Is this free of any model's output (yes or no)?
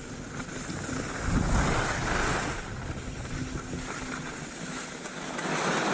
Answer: yes